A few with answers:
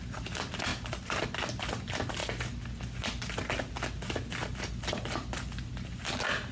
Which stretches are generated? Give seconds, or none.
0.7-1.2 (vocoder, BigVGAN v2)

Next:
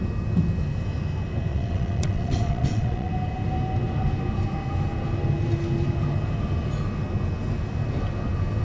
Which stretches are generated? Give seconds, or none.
1.5-3.1 (vocoder, WaveNeXt)

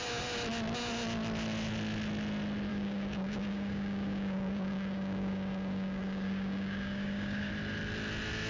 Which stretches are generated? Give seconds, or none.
2.7-7.5 (codec, DAC)

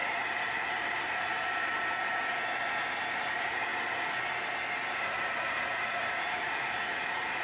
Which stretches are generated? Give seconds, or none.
0.0-3.7 (vocoder, BigVGAN v2); 5.0-7.4

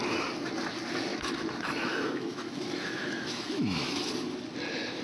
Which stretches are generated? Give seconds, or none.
1.1-4.1 (autoencoder, DAC-VAE)

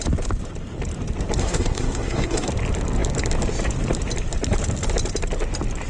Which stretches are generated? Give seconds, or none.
1.4-2.5 (codec, SNAC)

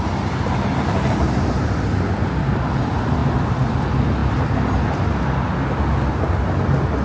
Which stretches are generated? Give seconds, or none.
none